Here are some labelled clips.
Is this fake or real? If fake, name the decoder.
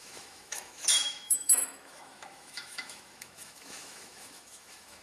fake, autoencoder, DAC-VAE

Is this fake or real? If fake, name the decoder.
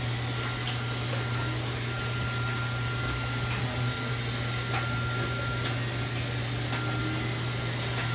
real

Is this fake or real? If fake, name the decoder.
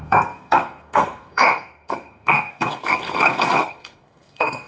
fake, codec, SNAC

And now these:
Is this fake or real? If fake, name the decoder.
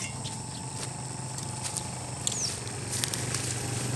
real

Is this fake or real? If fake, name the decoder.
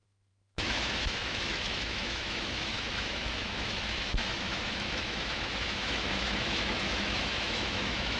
fake, autoencoder, DAC-VAE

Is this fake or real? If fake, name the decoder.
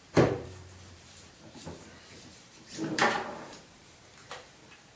fake, vocoder, BigVGAN v2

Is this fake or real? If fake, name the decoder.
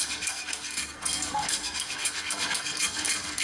fake, codec, SNAC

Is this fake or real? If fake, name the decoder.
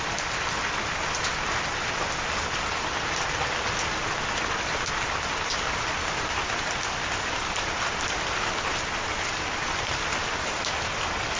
real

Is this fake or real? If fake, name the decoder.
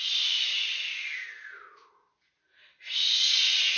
real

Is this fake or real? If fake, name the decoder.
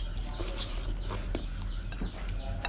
real